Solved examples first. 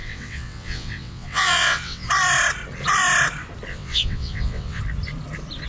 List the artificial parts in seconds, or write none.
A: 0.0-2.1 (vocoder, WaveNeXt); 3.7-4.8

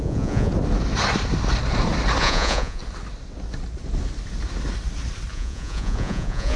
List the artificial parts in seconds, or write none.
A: 0.0-0.5 (vocoder, Vocos); 2.2-2.8; 5.3-6.6

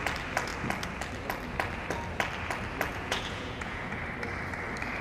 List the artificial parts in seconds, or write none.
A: 2.9-4.0 (vocoder, Vocos)

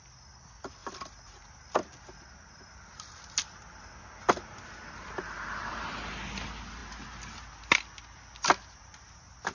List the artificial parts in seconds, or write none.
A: none

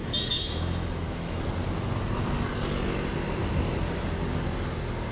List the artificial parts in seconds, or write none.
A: 0.0-1.4 (autoencoder, DAC-VAE)

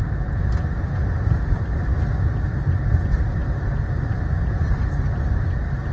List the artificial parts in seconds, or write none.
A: none

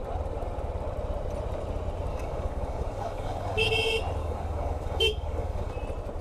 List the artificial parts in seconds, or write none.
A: 2.1-3.7 (codec, DAC); 4.2-5.7